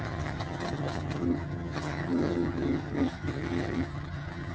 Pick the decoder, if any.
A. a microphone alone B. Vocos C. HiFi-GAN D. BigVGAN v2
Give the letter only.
C